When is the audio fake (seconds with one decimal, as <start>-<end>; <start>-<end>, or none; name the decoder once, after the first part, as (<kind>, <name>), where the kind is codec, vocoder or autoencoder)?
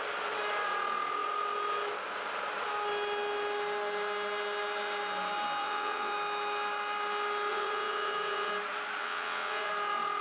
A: 5.6-6.1 (vocoder, WaveNeXt); 7.5-8.5; 9.0-9.7